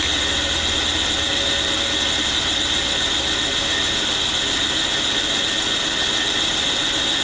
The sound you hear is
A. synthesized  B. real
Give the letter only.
B